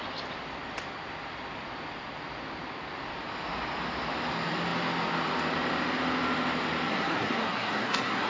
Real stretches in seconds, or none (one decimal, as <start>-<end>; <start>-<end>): 0.0-6.9